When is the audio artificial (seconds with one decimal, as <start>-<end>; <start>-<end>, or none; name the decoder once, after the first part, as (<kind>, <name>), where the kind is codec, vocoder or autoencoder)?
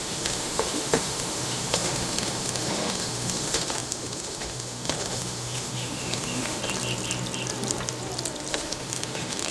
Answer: 0.0-6.6 (autoencoder, DAC-VAE); 8.5-9.5